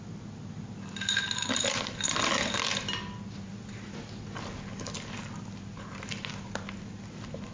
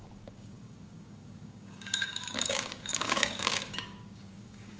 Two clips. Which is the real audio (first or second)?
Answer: first